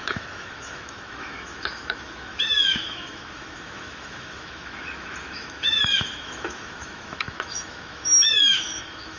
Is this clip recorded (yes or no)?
no